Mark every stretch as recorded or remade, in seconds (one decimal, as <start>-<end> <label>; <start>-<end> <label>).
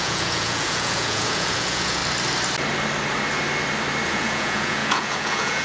0.0-2.0 remade; 2.0-4.1 recorded; 4.1-5.6 remade